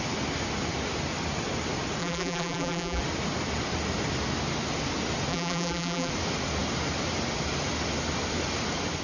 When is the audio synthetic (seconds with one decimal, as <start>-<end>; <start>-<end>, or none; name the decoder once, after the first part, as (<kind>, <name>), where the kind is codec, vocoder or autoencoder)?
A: 2.0-3.0 (vocoder, BigVGAN v2); 5.3-6.1